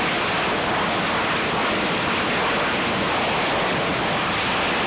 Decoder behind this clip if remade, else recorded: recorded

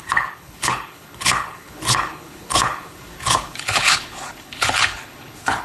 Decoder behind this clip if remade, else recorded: remade, codec, HILCodec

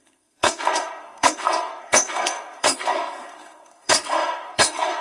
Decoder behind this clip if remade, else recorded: remade, codec, SNAC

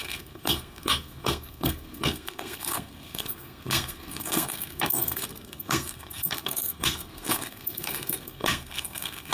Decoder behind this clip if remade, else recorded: remade, codec, SNAC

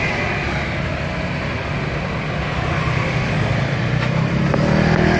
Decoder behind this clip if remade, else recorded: recorded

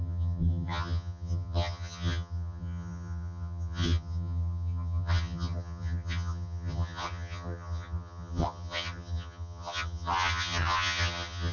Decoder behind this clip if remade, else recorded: remade, vocoder, HiFi-GAN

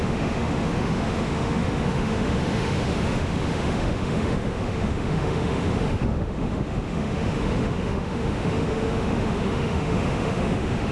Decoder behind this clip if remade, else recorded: remade, autoencoder, DAC-VAE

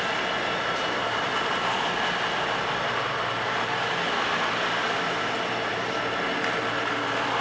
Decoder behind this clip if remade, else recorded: recorded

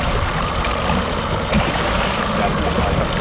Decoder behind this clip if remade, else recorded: recorded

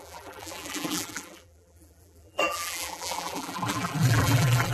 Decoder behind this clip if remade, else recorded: remade, vocoder, BigVGAN v2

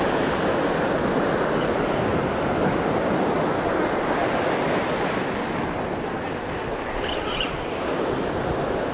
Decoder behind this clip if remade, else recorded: recorded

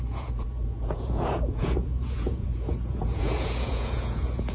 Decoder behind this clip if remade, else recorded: remade, vocoder, Vocos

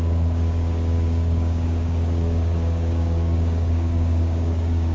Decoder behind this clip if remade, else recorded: remade, codec, DAC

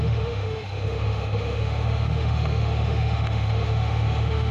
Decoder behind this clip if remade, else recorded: remade, autoencoder, DAC-VAE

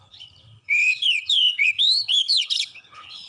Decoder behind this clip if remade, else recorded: remade, codec, HILCodec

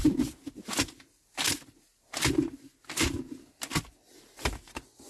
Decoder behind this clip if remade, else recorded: recorded